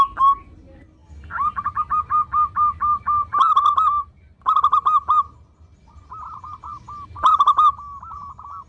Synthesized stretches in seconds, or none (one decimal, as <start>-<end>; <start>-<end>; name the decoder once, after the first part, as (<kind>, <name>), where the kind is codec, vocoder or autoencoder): none